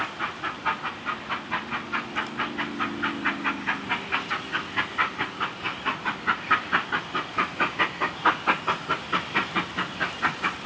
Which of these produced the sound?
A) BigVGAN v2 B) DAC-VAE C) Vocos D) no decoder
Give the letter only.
D